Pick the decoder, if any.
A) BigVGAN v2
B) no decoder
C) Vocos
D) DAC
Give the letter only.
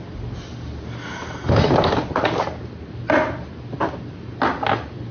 B